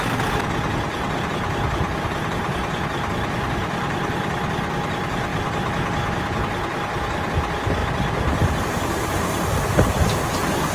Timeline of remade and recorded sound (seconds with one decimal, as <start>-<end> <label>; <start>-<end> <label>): 0.0-1.9 recorded; 1.9-2.6 remade; 2.6-5.3 recorded; 5.3-6.4 remade; 6.4-7.8 recorded; 7.8-8.6 remade; 8.6-10.7 recorded